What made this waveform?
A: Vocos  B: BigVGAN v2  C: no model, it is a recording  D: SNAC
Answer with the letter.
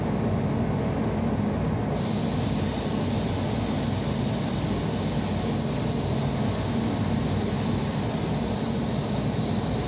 C